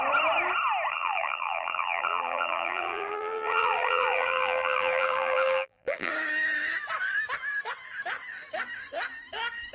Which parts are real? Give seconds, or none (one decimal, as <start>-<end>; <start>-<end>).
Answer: 0.0-0.9; 6.1-9.7